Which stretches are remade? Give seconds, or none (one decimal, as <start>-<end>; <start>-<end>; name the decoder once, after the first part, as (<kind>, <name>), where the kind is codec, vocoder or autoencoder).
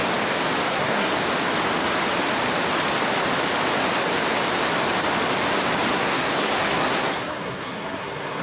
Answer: 0.7-1.1 (codec, SNAC); 5.9-8.4